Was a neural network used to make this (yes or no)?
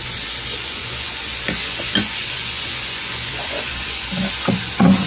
yes